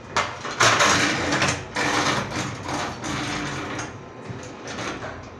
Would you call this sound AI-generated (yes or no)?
no